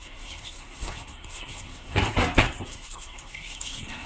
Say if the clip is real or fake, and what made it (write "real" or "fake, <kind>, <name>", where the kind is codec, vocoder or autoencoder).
fake, codec, SNAC